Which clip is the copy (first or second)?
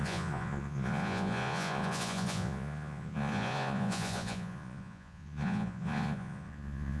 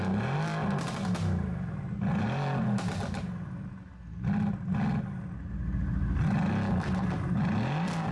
first